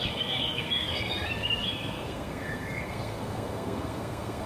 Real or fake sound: fake